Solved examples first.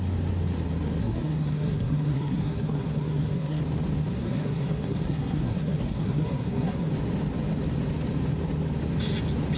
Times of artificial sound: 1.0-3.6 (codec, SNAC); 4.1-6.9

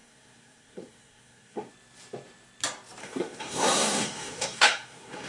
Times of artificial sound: 0.0-1.7 (codec, SNAC); 3.0-5.3

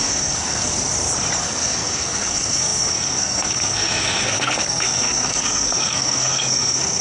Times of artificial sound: 0.0-0.7 (codec, SNAC); 1.4-7.0